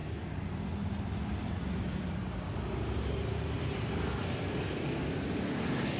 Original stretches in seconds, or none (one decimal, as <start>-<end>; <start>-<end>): 0.0-6.0